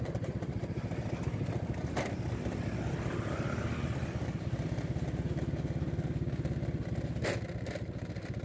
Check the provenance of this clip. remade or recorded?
recorded